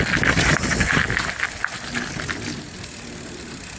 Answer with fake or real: real